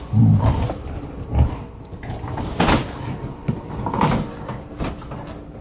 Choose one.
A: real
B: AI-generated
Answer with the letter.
A